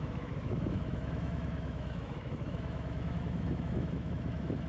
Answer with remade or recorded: remade